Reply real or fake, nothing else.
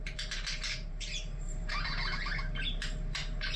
fake